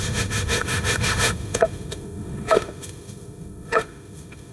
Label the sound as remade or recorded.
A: remade